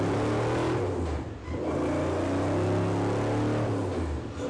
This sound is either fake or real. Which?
real